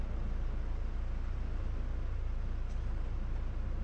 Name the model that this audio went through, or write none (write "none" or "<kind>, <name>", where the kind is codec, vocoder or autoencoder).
none